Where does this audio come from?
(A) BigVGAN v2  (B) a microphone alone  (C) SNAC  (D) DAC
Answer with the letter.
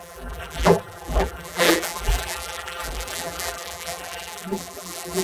A